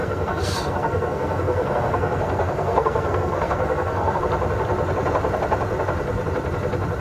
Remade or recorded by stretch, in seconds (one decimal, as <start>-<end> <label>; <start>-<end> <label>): 0.0-4.2 remade; 4.2-7.0 recorded